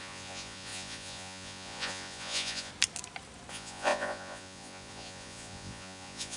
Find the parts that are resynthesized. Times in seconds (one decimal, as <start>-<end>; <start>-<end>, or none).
0.0-2.7; 3.5-6.4